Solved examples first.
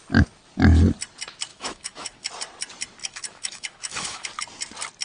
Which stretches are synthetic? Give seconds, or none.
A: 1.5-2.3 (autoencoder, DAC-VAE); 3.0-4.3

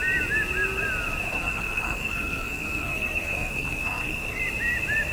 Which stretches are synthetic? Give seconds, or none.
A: 1.3-4.4 (codec, SNAC)